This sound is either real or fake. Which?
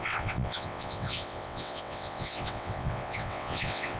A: fake